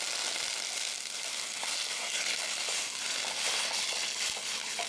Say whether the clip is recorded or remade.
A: recorded